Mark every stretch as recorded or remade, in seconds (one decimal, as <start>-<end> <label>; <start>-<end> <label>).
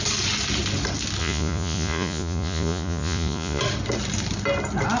0.0-1.2 recorded; 1.2-3.6 remade; 3.6-5.0 recorded